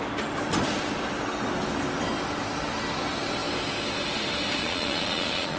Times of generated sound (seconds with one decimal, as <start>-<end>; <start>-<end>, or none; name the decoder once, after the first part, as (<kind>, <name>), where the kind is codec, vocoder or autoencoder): 4.6-5.6 (vocoder, Vocos)